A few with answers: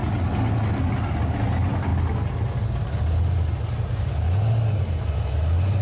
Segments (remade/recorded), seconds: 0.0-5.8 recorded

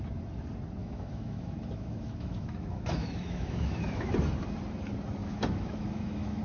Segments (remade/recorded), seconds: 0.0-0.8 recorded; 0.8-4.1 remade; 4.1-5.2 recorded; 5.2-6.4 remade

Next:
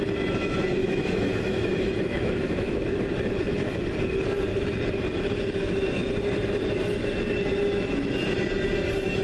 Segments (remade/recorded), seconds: 0.0-0.8 recorded; 0.8-3.0 remade; 3.0-9.2 recorded

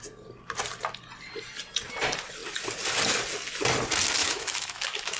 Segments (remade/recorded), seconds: 0.0-4.2 recorded; 4.2-5.2 remade